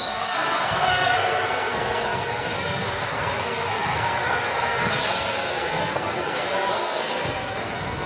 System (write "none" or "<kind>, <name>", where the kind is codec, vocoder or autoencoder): codec, SNAC